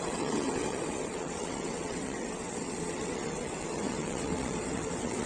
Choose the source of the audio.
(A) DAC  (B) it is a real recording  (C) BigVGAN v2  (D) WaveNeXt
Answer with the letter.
D